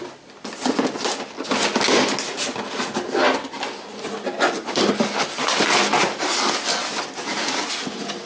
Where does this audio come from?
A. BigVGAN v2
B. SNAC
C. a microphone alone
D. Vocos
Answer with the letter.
C